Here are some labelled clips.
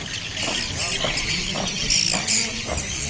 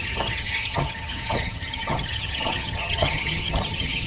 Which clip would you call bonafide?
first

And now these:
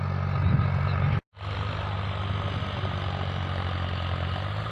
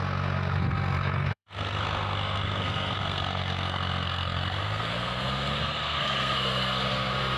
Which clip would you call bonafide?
first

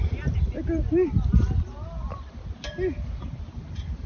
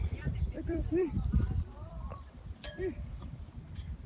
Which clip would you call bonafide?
first